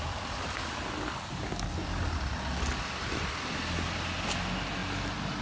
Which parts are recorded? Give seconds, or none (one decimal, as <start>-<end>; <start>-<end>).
0.0-5.4